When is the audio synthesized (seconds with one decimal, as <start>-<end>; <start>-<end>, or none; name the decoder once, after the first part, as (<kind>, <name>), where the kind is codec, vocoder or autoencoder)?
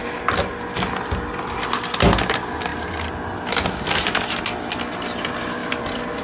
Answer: none